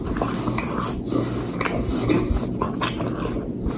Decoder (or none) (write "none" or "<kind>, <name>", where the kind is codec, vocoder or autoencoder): none